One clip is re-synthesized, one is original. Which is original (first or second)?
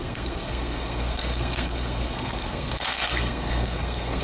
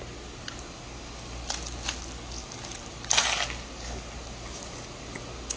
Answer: second